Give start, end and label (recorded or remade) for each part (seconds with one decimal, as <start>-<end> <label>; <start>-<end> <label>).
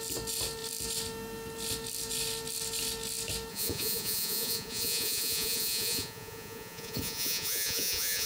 0.0-3.5 recorded; 3.5-8.3 remade